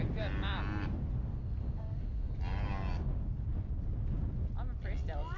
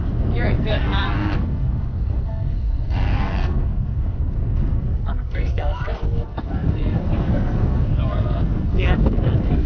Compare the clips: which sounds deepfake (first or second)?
second